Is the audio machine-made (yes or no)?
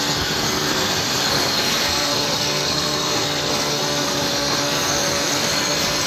yes